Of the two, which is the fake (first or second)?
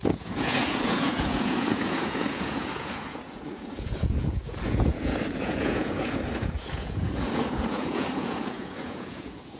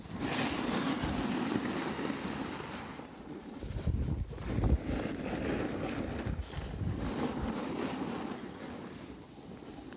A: first